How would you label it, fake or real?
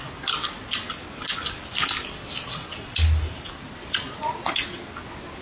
real